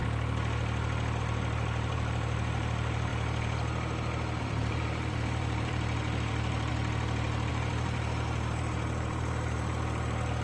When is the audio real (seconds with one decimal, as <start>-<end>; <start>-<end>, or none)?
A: 0.0-1.2; 3.1-4.4; 6.7-7.5